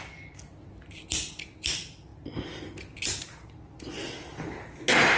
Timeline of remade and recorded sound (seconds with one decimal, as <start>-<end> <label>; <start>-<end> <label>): 0.0-5.2 recorded